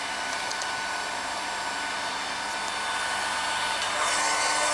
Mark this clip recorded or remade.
recorded